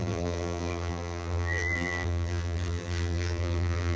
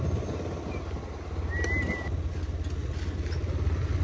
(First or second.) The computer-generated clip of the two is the first